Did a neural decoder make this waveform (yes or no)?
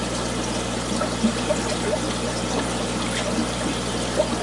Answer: no